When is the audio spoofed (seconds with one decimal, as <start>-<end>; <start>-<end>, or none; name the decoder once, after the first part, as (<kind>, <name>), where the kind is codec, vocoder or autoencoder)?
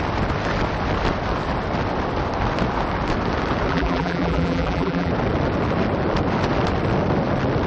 3.7-5.1 (vocoder, BigVGAN v2)